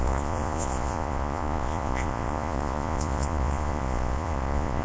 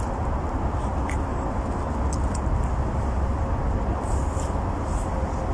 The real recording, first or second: second